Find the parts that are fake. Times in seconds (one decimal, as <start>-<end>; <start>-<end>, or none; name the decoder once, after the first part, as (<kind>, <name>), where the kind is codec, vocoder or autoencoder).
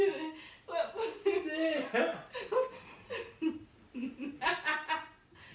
none